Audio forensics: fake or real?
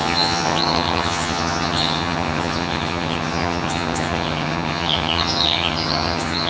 fake